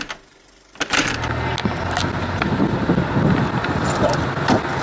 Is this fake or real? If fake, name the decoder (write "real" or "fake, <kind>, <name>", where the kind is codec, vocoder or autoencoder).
real